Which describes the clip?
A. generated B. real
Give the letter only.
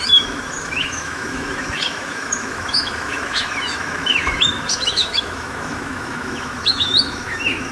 A